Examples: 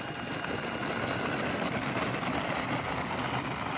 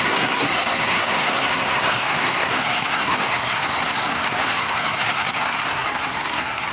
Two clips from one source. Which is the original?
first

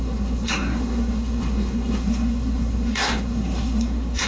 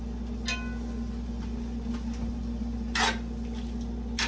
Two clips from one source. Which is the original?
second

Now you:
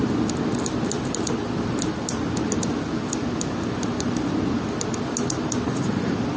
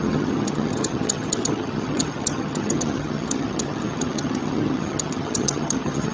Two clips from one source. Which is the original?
first